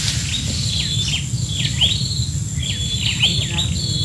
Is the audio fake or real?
real